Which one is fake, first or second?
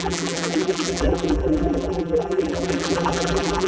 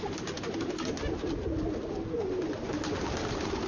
first